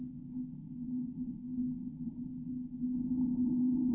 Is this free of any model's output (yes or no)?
yes